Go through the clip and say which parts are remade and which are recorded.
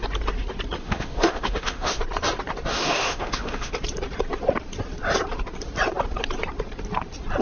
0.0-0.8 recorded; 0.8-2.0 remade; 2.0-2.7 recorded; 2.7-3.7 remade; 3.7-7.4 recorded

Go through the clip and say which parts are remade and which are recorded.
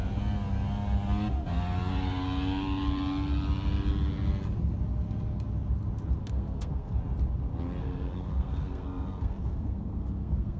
0.0-6.2 recorded; 6.2-7.0 remade; 7.0-7.8 recorded; 7.8-10.6 remade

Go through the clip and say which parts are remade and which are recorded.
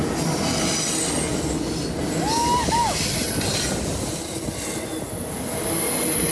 0.0-6.3 recorded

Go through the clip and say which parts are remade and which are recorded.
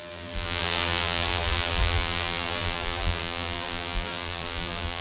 0.0-5.0 remade